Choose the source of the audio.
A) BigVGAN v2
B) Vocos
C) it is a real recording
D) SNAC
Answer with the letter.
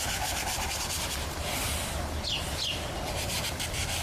C